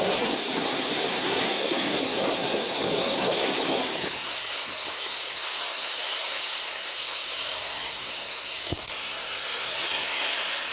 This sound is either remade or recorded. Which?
remade